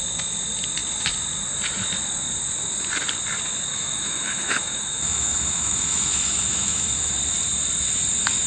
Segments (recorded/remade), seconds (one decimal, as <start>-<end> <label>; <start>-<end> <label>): 0.0-3.7 recorded; 3.7-7.1 remade; 7.1-8.5 recorded